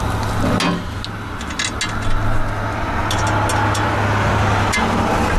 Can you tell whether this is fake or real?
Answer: real